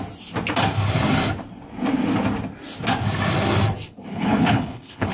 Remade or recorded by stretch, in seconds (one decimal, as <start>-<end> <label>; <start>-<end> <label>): 0.0-4.1 recorded; 4.1-5.1 remade